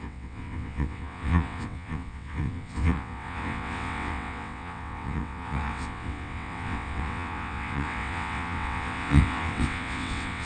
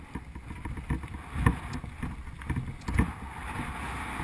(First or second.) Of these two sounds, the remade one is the first